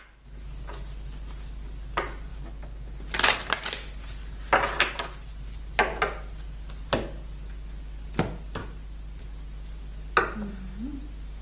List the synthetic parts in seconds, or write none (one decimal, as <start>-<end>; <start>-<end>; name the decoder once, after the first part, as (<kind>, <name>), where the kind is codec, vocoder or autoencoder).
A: none